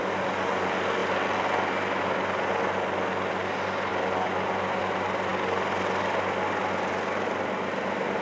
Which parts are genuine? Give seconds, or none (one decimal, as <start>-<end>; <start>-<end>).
0.0-8.2